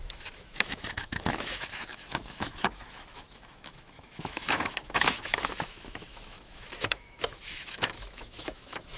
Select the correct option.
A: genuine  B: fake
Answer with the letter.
B